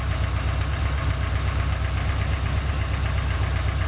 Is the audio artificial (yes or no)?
no